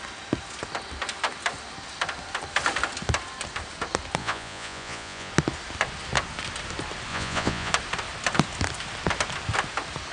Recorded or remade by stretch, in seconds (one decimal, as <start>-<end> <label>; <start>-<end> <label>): 0.0-4.2 recorded; 4.2-5.3 remade; 5.3-7.1 recorded; 7.1-7.7 remade; 7.7-10.1 recorded